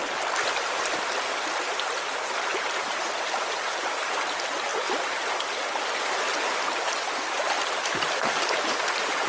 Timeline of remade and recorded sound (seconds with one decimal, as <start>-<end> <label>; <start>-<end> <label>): 0.0-9.3 recorded